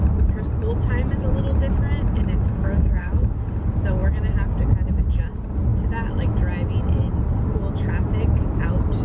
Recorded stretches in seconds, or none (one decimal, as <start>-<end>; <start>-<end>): 0.0-2.5; 3.4-9.0